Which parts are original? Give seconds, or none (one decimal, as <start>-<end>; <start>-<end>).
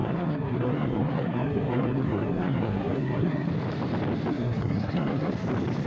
3.5-4.3; 5.3-5.9